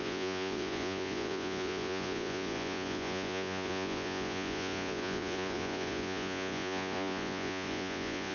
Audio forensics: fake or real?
fake